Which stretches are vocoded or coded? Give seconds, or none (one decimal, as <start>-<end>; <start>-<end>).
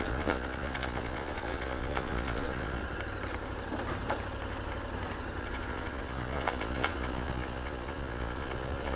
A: 0.0-2.8; 5.4-8.9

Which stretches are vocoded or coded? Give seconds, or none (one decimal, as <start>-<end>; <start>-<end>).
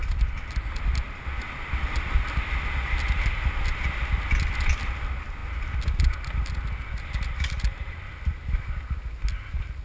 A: none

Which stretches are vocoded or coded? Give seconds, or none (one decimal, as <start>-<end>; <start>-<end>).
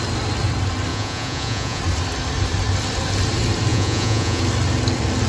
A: 0.9-1.8; 3.7-4.4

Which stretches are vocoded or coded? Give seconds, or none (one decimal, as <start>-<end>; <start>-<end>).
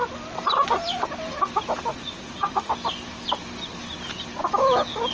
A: 1.9-2.7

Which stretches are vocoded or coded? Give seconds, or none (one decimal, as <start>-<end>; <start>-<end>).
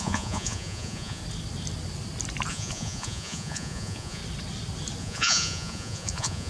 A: 0.0-1.2; 2.5-4.2; 5.0-6.5